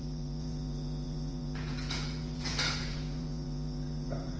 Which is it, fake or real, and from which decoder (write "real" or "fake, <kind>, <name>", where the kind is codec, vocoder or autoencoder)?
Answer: fake, vocoder, Vocos